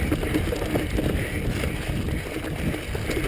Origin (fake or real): real